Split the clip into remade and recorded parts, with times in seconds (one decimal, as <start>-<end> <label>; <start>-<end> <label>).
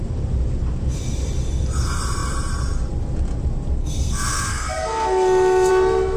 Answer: 0.0-3.8 recorded; 3.8-5.7 remade; 5.7-6.2 recorded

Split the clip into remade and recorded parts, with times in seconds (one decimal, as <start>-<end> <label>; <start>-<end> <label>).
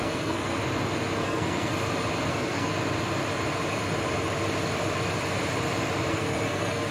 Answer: 0.0-0.5 remade; 0.5-1.2 recorded; 1.2-1.7 remade; 1.7-2.3 recorded; 2.3-2.7 remade; 2.7-6.1 recorded; 6.1-6.9 remade